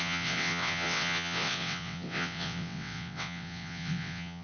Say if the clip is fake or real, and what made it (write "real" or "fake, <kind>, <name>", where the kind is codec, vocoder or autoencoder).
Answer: fake, vocoder, WaveNeXt